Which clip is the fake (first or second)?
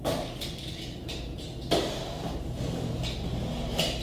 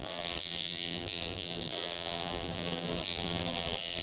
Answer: second